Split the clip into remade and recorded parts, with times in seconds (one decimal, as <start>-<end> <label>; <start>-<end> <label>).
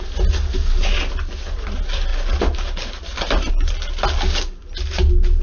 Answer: 0.0-5.4 recorded